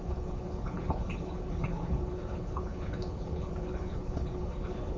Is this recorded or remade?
remade